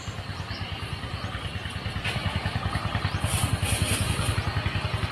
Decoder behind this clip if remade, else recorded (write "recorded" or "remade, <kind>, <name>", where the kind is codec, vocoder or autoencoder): remade, vocoder, BigVGAN v2